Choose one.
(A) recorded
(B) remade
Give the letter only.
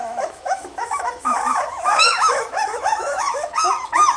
B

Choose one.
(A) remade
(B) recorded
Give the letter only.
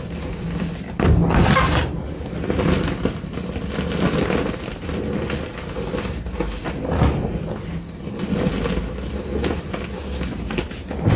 B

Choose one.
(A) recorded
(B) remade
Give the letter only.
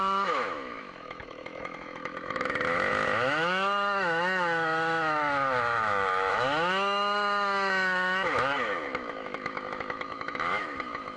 B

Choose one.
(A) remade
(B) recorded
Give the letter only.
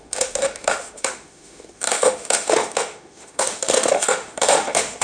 A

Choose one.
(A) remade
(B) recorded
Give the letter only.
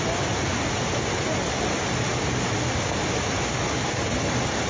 B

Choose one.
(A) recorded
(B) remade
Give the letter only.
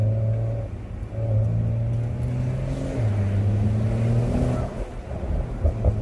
A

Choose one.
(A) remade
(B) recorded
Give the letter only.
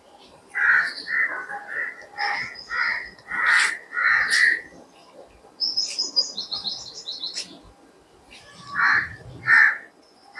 B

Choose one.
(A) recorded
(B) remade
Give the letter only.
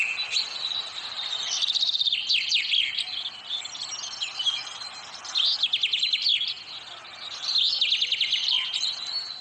A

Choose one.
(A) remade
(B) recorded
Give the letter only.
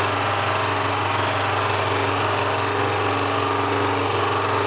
B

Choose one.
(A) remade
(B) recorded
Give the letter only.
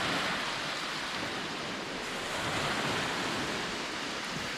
B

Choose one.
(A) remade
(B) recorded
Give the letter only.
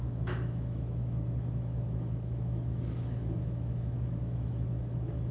A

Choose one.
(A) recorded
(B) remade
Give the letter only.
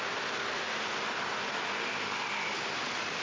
A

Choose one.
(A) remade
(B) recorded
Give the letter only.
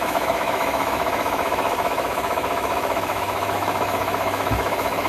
A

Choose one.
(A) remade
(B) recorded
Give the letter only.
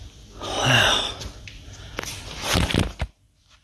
B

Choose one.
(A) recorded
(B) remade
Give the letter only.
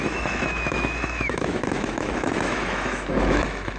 B